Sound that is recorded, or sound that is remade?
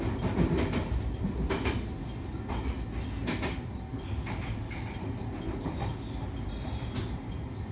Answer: recorded